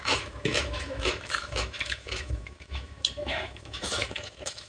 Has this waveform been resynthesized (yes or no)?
yes